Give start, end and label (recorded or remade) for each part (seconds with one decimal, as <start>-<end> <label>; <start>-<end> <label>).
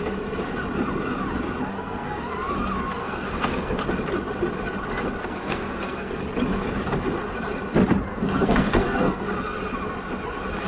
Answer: 0.0-1.7 recorded; 1.7-2.2 remade; 2.2-3.0 recorded; 3.0-3.8 remade; 3.8-5.2 recorded; 5.2-6.2 remade; 6.2-8.1 recorded; 8.1-9.2 remade; 9.2-10.7 recorded